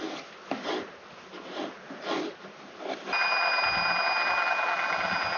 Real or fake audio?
real